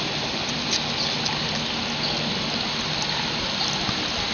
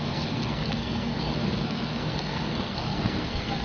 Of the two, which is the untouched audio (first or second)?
first